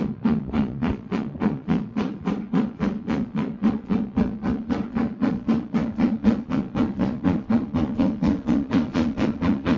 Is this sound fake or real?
fake